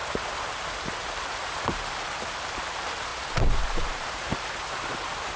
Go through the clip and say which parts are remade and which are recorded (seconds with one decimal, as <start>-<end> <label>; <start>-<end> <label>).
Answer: 0.0-1.2 remade; 1.2-3.1 recorded; 3.1-5.4 remade